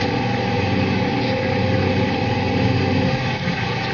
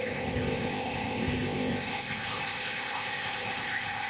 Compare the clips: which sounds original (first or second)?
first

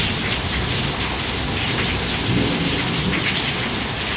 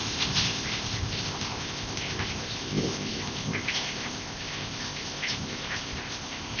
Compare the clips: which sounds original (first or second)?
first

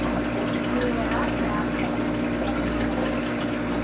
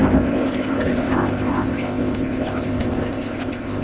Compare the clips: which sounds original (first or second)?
first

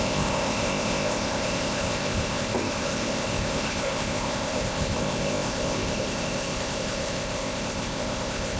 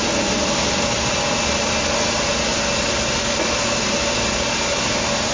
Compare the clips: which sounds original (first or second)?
second